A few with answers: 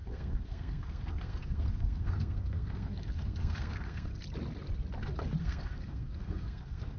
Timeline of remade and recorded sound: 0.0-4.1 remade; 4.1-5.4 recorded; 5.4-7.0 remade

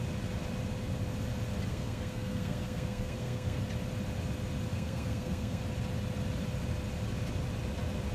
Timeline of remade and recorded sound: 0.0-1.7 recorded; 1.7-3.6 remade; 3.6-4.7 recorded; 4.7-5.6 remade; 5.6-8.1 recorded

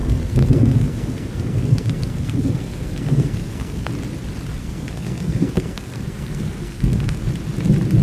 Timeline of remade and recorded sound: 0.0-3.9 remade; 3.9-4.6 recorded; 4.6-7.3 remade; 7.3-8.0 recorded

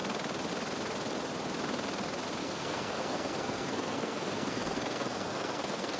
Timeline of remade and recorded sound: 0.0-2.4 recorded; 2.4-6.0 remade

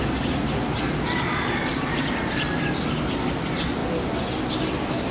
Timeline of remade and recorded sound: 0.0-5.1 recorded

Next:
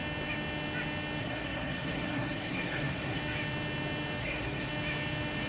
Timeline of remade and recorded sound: 0.0-1.2 recorded; 1.2-3.2 remade; 3.2-4.2 recorded; 4.2-4.7 remade; 4.7-5.5 recorded

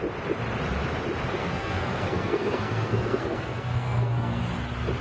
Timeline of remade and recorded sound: 0.0-1.4 recorded; 1.4-4.4 remade; 4.4-5.0 recorded

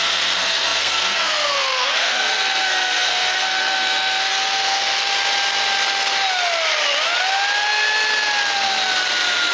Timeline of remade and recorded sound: 0.0-5.0 remade; 5.0-9.5 recorded